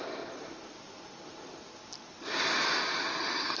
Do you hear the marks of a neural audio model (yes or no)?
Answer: no